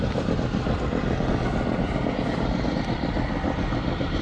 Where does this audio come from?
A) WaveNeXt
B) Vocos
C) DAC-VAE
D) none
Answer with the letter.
D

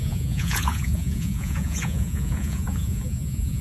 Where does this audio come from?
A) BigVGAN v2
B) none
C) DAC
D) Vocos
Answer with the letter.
D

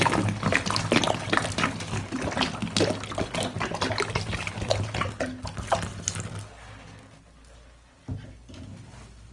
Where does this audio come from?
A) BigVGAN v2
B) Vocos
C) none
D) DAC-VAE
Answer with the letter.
C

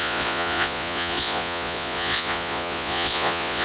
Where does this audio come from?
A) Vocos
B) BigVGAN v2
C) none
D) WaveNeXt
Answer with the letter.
A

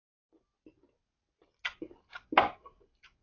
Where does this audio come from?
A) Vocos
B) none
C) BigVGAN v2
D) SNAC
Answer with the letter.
B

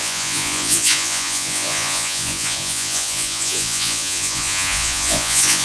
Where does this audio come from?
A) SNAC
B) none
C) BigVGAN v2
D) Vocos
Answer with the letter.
D